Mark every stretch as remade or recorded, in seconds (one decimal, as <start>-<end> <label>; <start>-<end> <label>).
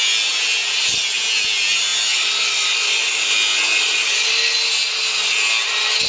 0.0-6.1 recorded